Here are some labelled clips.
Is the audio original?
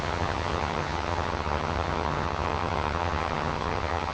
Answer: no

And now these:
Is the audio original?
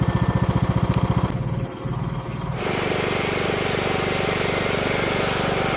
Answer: yes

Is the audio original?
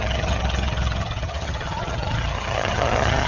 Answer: no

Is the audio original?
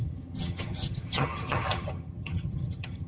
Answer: no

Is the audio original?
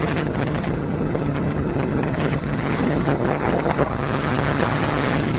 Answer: no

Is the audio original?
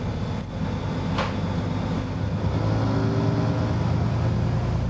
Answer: yes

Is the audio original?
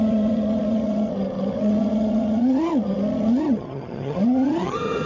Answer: no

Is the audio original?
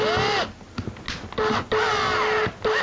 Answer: yes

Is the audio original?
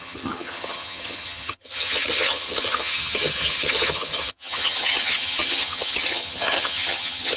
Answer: no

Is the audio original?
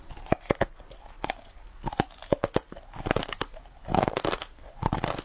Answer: yes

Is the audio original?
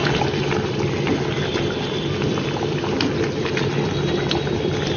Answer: yes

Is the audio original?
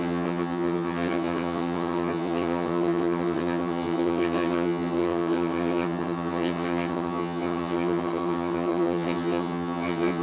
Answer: no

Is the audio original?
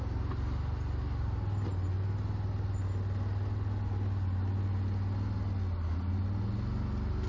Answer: yes